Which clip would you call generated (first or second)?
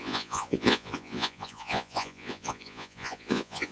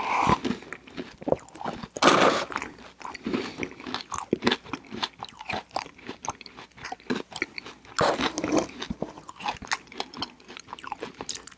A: first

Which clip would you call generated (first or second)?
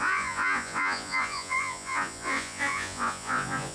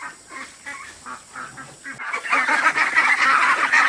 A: first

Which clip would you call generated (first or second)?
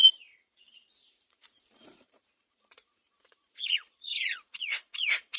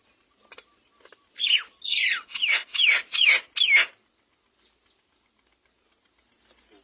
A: first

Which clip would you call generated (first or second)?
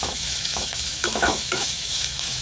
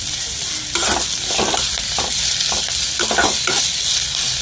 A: first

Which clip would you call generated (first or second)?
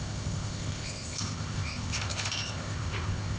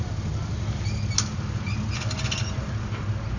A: first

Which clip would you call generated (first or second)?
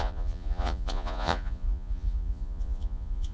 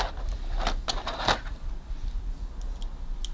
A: first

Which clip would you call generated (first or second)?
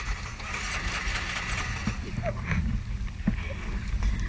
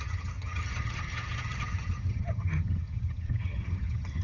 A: second